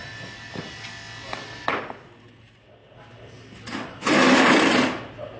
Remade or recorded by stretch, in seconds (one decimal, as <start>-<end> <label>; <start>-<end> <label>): 0.0-5.4 recorded